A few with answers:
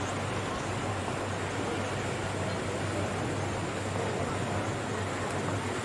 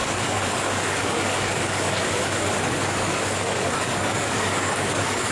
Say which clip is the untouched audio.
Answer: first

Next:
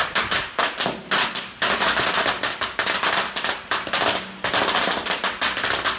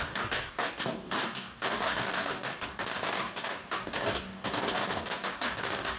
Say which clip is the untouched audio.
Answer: first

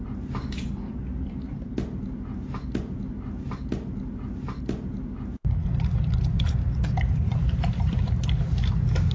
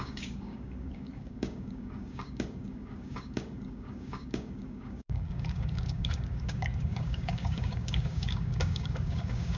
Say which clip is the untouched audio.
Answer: first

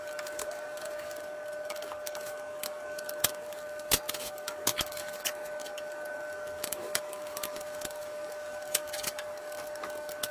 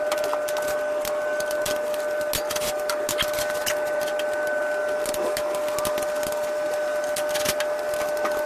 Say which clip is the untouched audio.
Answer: second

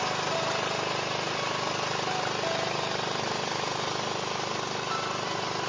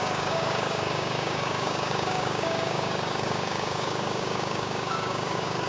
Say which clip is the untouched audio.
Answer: first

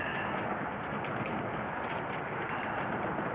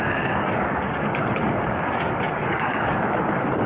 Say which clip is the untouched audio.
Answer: first